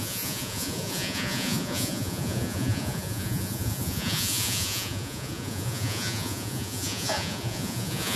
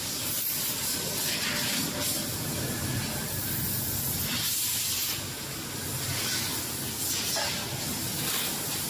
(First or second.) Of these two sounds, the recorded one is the second